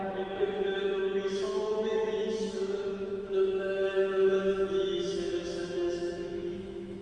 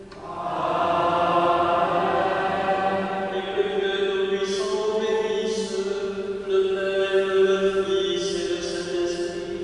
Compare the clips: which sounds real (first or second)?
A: second